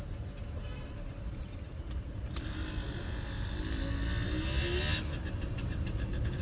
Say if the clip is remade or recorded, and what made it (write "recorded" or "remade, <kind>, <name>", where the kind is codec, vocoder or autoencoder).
recorded